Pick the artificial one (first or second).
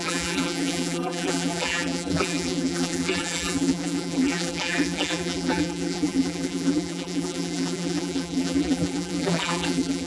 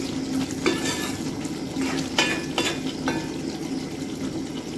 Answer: first